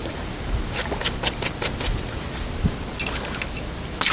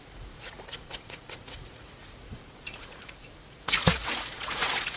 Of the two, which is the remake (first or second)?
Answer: second